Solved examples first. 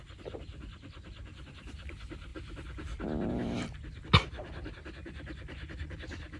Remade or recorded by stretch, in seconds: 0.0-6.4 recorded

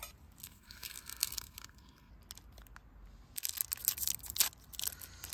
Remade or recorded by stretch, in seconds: 0.0-0.4 recorded; 0.4-2.1 remade; 2.1-5.3 recorded

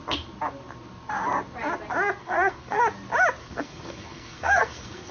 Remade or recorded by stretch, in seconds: 0.0-2.2 recorded; 2.2-2.8 remade; 2.8-3.4 recorded; 3.4-5.1 remade

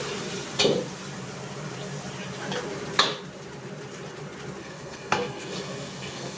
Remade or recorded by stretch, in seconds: 0.0-4.6 recorded; 4.6-6.4 remade